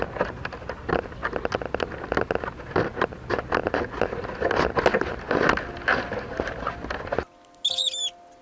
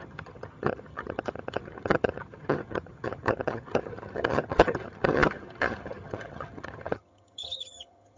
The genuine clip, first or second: first